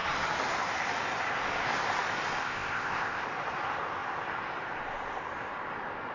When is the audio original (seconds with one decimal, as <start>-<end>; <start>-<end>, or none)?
0.0-2.4; 3.2-6.1